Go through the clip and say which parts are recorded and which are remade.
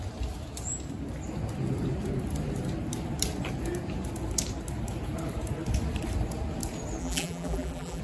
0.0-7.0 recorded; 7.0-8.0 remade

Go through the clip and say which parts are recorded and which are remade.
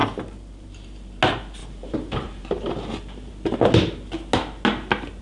0.0-1.2 remade; 1.2-1.6 recorded; 1.6-3.3 remade; 3.3-5.2 recorded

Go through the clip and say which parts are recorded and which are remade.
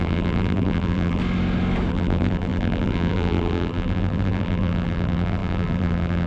0.0-1.2 remade; 1.2-1.9 recorded; 1.9-6.3 remade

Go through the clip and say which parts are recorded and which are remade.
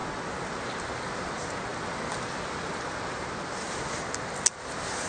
0.0-5.1 recorded